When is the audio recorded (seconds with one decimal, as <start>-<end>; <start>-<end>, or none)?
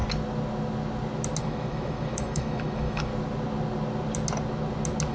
0.0-1.4; 3.1-5.1